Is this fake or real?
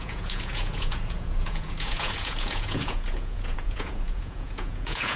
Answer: fake